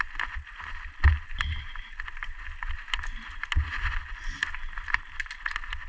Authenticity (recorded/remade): recorded